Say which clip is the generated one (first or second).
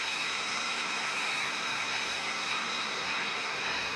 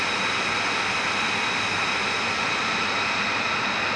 first